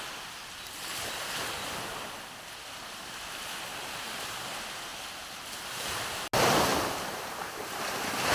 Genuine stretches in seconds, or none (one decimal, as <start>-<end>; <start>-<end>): 0.0-3.7; 4.3-4.9; 6.3-6.7; 7.8-8.3